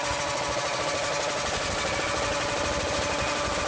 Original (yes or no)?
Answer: yes